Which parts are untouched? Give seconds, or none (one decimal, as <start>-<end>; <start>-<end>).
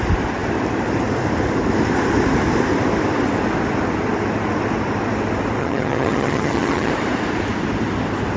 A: 0.0-5.6; 6.9-8.4